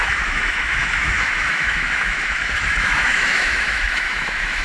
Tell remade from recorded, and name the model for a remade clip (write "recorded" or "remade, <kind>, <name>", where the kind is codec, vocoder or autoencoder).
remade, autoencoder, DAC-VAE